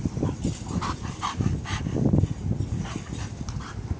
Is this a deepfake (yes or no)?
no